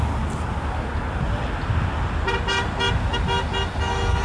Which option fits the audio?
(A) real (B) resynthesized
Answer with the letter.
A